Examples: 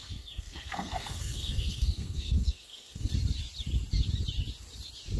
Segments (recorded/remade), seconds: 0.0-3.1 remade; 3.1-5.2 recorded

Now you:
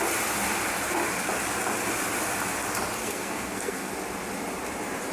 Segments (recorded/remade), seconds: 0.0-3.0 recorded; 3.0-3.9 remade; 3.9-5.1 recorded

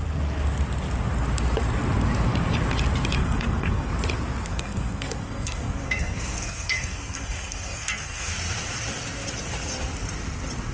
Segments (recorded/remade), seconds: 0.0-3.2 recorded; 3.2-3.9 remade; 3.9-4.5 recorded; 4.5-8.3 remade; 8.3-10.7 recorded

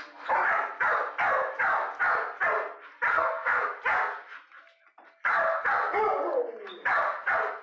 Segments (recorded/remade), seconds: 0.0-3.1 recorded; 3.1-3.6 remade; 3.6-7.6 recorded

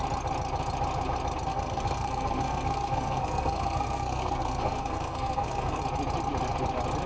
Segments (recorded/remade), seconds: 0.0-1.5 recorded; 1.5-5.8 remade; 5.8-7.1 recorded

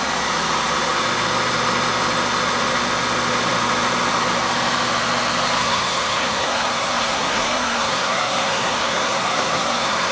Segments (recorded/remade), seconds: 0.0-5.6 recorded; 5.6-10.1 remade